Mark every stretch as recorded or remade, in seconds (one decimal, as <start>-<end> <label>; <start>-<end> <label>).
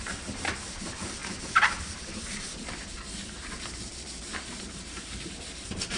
0.0-6.0 remade